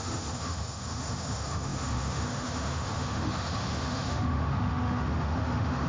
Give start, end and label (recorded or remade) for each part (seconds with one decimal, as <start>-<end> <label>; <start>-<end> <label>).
0.0-5.9 remade

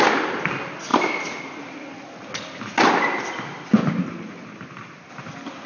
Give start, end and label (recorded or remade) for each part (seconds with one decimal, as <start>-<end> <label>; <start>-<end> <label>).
0.0-5.7 recorded

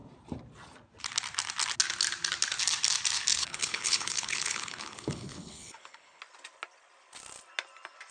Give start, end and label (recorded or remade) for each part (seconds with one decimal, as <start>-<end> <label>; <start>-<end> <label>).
0.0-3.3 recorded; 3.3-6.2 remade; 6.2-8.1 recorded

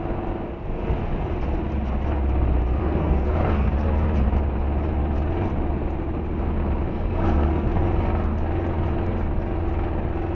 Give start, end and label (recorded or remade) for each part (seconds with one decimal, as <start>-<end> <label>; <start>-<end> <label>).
0.0-2.8 recorded; 2.8-3.7 remade; 3.7-6.9 recorded; 6.9-7.8 remade; 7.8-10.3 recorded

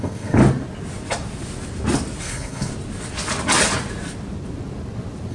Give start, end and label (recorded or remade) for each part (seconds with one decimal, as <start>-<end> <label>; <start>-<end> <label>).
0.0-0.4 remade; 0.4-2.2 recorded; 2.2-2.7 remade; 2.7-5.3 recorded

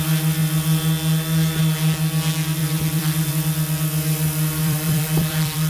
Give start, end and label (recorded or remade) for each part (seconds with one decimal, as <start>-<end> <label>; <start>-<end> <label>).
0.0-2.6 recorded; 2.6-3.3 remade; 3.3-4.6 recorded; 4.6-5.7 remade

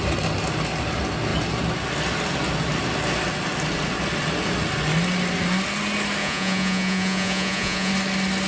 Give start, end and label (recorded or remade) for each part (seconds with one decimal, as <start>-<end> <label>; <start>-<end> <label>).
0.0-6.2 recorded; 6.2-7.9 remade; 7.9-8.5 recorded

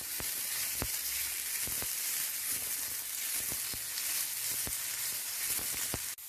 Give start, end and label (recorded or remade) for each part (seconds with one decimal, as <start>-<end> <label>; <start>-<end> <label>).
0.0-1.2 remade; 1.2-5.0 recorded; 5.0-5.4 remade; 5.4-6.3 recorded